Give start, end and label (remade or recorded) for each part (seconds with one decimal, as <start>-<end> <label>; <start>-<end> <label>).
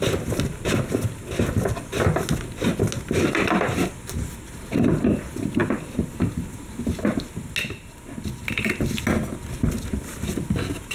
0.0-10.9 recorded